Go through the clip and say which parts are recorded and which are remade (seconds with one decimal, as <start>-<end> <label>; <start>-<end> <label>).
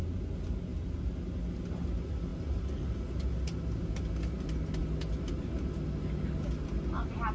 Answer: 0.0-7.3 recorded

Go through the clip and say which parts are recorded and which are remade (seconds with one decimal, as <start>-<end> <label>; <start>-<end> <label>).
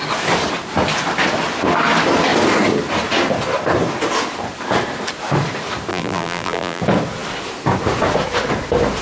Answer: 0.0-5.9 recorded; 5.9-6.8 remade; 6.8-9.0 recorded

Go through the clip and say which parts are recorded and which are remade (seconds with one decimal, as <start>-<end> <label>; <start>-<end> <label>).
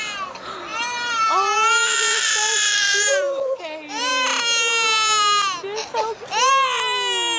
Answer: 0.0-0.7 recorded; 0.7-3.6 remade; 3.6-7.4 recorded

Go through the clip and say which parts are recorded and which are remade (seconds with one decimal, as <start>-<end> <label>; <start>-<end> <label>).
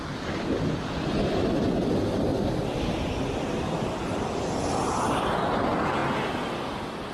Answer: 0.0-2.3 recorded; 2.3-4.5 remade; 4.5-7.1 recorded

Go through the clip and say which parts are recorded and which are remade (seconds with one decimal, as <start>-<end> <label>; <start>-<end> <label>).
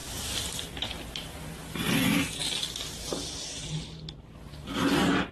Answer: 0.0-1.1 recorded; 1.1-2.4 remade; 2.4-3.3 recorded; 3.3-5.3 remade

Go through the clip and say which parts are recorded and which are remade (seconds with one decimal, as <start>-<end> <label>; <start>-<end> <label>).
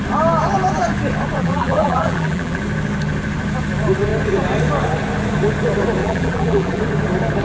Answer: 0.0-1.4 recorded; 1.4-2.6 remade; 2.6-6.0 recorded; 6.0-6.8 remade; 6.8-7.4 recorded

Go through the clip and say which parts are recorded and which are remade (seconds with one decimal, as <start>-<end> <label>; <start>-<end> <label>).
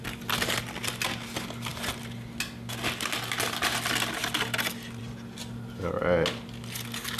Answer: 0.0-7.2 recorded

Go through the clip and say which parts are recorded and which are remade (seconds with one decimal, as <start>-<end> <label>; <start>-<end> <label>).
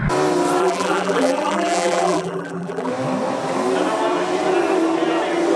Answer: 0.0-0.6 recorded; 0.6-2.9 remade; 2.9-5.6 recorded